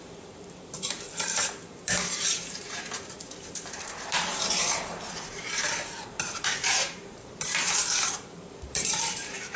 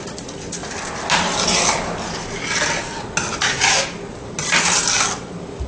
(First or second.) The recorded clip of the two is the second